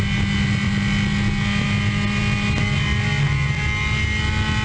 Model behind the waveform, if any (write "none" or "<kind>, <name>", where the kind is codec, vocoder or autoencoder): none